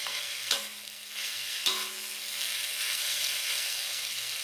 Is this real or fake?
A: fake